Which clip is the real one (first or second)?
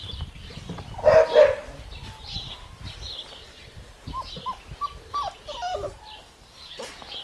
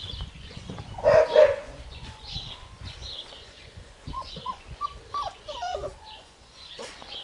first